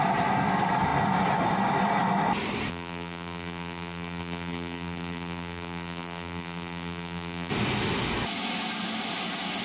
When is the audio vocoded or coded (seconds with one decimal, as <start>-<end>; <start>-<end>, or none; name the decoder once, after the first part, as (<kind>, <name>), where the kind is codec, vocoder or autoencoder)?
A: 2.7-7.5 (vocoder, BigVGAN v2)